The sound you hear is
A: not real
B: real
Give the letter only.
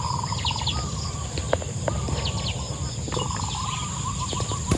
B